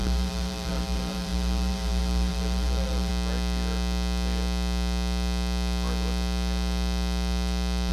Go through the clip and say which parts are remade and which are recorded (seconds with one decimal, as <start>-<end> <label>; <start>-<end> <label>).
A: 0.0-3.1 remade; 3.1-7.9 recorded

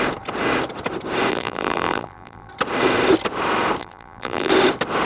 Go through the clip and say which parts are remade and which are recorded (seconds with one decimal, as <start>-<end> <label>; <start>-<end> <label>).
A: 0.0-1.3 recorded; 1.3-2.5 remade; 2.5-3.8 recorded; 3.8-4.5 remade; 4.5-5.1 recorded

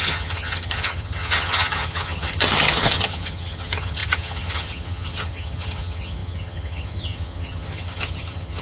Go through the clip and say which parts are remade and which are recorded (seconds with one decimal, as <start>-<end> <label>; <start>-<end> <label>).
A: 0.0-8.6 remade

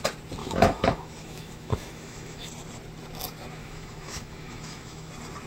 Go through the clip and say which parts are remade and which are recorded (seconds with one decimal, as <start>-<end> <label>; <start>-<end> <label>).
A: 0.0-0.4 recorded; 0.4-2.5 remade; 2.5-3.6 recorded; 3.6-5.1 remade; 5.1-5.5 recorded

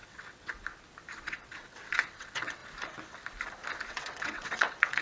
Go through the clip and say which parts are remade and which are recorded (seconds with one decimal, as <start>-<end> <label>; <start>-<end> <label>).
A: 0.0-0.6 remade; 0.6-1.1 recorded; 1.1-2.6 remade; 2.6-3.9 recorded; 3.9-5.0 remade